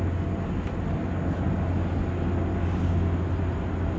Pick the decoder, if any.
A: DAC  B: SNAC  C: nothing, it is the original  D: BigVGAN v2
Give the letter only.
C